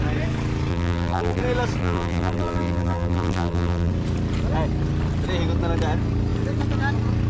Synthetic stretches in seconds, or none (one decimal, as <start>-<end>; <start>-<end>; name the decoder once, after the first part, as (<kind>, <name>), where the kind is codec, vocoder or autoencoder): 0.7-1.4 (vocoder, BigVGAN v2); 1.8-3.9